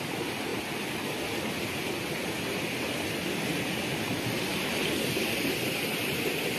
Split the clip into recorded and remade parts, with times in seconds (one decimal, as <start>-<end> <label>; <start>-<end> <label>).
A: 0.0-6.6 recorded